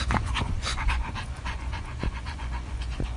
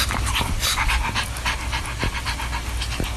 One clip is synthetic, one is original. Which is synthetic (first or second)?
first